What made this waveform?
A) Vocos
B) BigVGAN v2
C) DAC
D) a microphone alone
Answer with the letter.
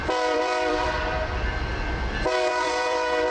B